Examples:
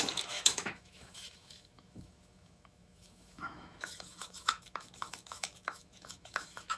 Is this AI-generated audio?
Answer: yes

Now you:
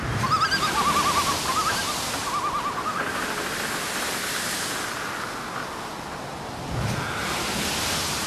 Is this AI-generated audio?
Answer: no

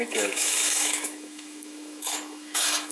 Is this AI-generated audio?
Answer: yes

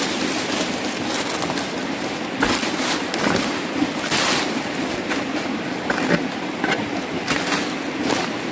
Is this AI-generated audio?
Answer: no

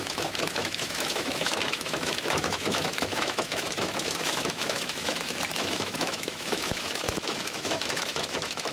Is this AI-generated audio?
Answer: yes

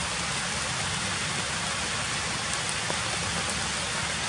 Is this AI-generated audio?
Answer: no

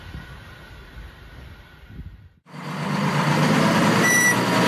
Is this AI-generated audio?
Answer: no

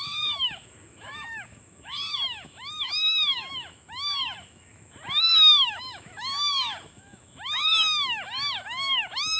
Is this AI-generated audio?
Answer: yes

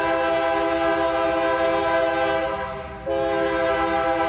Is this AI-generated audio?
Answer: no